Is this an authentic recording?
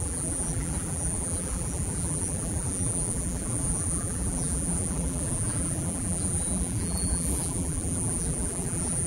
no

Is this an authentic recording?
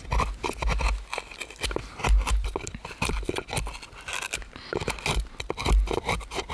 yes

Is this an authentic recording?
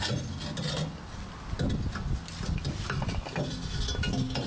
yes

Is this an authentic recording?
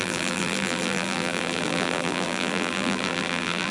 no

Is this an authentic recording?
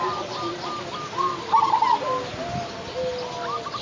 yes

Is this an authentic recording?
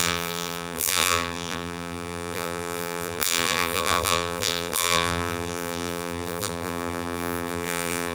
no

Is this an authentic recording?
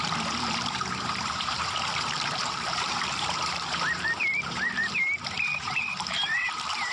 no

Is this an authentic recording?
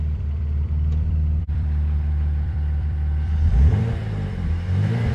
no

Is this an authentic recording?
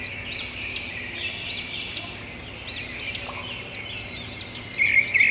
yes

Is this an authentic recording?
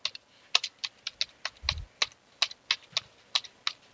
yes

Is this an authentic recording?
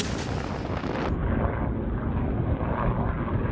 yes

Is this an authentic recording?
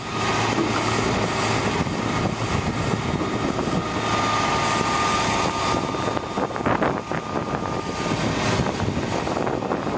yes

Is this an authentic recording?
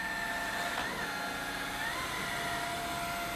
yes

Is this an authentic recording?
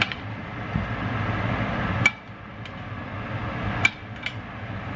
yes